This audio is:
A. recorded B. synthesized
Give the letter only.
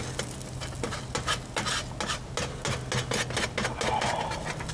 A